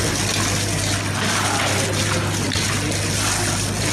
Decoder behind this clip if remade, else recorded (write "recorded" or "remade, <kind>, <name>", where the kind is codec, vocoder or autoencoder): recorded